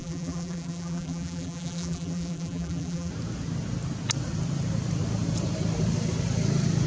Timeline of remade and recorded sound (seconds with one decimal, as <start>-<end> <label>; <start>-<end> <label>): 0.0-3.1 remade; 3.1-6.9 recorded